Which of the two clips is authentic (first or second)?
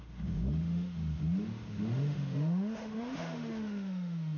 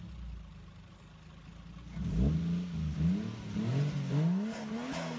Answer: second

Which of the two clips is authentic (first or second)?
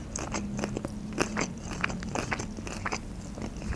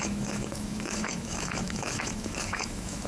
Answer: first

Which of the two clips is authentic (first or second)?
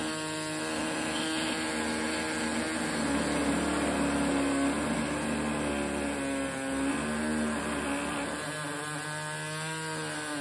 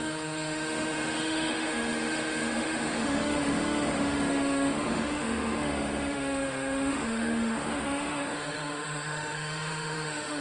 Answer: first